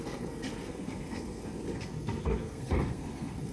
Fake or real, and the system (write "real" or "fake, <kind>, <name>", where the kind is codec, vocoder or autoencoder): fake, codec, SNAC